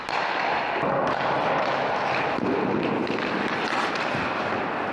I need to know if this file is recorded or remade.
recorded